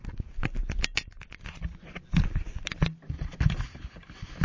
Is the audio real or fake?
real